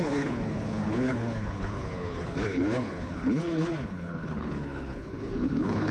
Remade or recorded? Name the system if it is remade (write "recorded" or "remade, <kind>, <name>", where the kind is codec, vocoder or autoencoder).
remade, codec, HILCodec